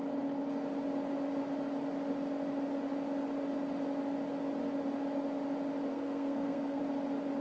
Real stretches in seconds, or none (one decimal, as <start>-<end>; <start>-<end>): 0.0-5.9; 6.8-7.4